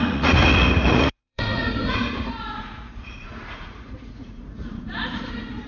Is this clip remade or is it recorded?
remade